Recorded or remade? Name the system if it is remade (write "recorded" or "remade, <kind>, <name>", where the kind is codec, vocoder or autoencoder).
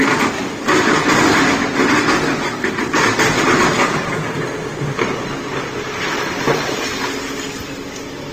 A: recorded